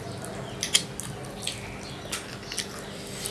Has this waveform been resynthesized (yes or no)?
no